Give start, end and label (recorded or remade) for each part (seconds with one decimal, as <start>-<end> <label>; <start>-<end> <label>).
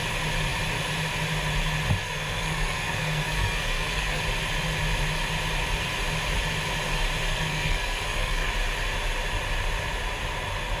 0.0-2.0 recorded; 2.0-4.2 remade; 4.2-7.3 recorded; 7.3-8.5 remade; 8.5-10.8 recorded